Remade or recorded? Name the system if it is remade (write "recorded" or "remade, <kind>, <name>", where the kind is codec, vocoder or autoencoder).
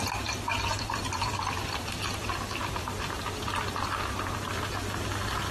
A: remade, vocoder, BigVGAN v2